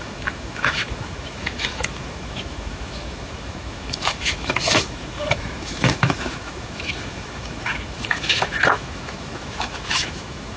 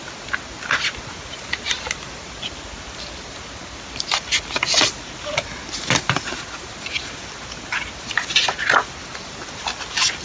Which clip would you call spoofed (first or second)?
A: first